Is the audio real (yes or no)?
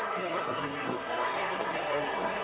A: no